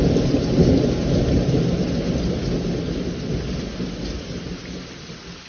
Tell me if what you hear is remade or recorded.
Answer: recorded